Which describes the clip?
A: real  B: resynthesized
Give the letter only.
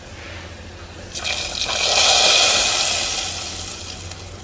A